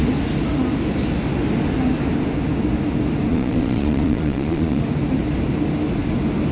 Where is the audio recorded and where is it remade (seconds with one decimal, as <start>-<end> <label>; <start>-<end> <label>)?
0.0-3.3 recorded; 3.3-4.8 remade; 4.8-6.5 recorded